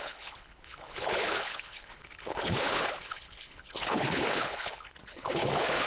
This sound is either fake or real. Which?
fake